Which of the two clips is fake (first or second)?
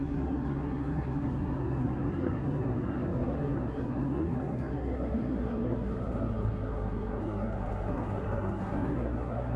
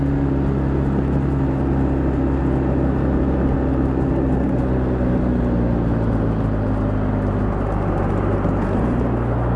first